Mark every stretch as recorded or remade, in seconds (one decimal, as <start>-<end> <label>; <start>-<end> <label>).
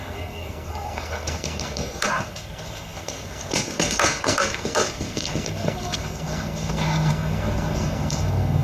0.0-8.6 remade